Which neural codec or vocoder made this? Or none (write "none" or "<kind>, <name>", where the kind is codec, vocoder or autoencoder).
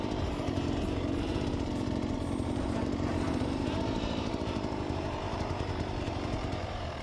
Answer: vocoder, BigVGAN v2